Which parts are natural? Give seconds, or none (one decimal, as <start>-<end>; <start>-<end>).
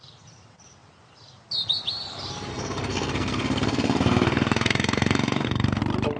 0.0-2.5; 5.8-6.2